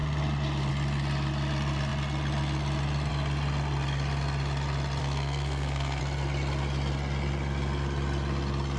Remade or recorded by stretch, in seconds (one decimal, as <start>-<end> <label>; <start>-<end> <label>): 0.0-5.0 recorded; 5.0-6.0 remade; 6.0-8.8 recorded